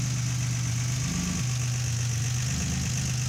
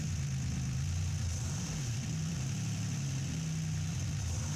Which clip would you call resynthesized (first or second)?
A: second